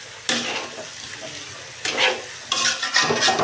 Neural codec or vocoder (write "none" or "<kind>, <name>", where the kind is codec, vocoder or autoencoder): none